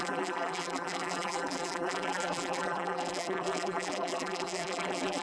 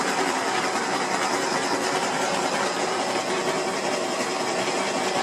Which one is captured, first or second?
second